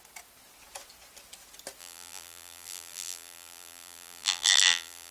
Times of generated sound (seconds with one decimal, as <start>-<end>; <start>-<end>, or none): 1.8-5.1

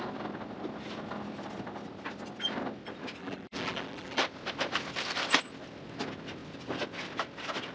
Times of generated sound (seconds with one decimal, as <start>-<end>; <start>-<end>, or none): 3.2-4.2